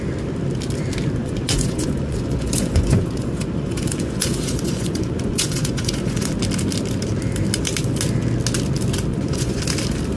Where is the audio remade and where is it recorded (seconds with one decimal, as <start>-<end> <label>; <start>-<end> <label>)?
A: 0.0-1.2 recorded; 1.2-6.3 remade; 6.3-9.1 recorded; 9.1-9.6 remade; 9.6-10.2 recorded